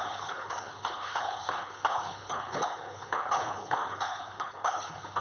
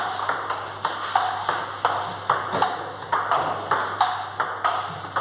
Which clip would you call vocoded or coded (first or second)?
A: first